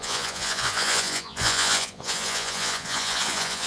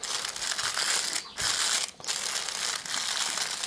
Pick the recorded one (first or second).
second